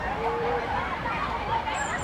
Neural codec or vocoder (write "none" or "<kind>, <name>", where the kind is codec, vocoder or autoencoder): vocoder, BigVGAN v2